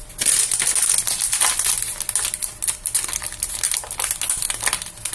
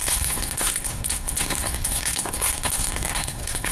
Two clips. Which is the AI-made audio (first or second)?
second